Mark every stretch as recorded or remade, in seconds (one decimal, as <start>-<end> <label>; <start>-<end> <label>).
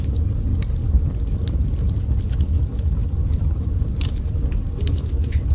0.0-0.5 recorded; 0.5-2.2 remade; 2.2-3.0 recorded; 3.0-3.9 remade; 3.9-5.5 recorded